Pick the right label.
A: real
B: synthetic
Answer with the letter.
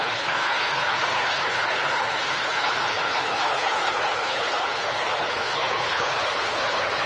B